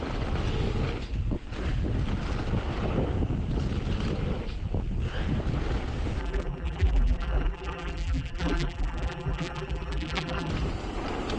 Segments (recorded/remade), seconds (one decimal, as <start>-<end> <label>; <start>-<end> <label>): 0.0-6.2 recorded; 6.2-10.5 remade; 10.5-11.4 recorded